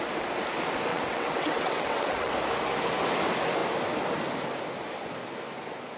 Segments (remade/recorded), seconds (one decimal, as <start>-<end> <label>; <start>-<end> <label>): 0.0-0.9 recorded; 0.9-2.3 remade; 2.3-6.0 recorded